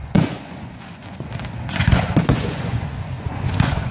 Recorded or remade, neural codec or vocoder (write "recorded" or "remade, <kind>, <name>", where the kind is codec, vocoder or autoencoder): remade, vocoder, Vocos